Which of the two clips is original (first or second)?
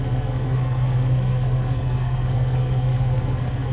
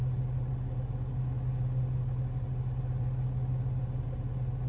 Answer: second